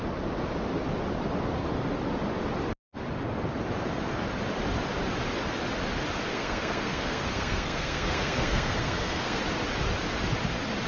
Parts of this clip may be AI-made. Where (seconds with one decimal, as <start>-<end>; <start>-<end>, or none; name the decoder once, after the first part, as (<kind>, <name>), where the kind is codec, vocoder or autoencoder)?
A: 6.3-9.4 (codec, SNAC)